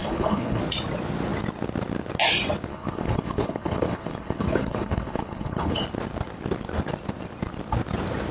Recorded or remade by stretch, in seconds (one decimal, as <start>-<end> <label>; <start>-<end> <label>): 0.0-0.6 remade; 0.6-2.7 recorded; 2.7-5.8 remade; 5.8-8.3 recorded